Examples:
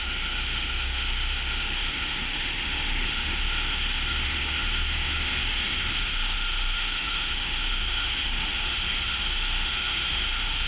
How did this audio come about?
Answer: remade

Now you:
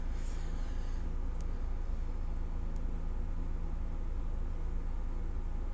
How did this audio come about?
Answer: recorded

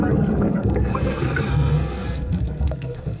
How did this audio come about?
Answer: remade